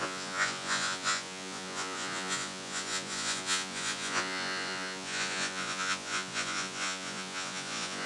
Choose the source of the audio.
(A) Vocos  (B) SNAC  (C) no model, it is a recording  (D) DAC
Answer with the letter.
A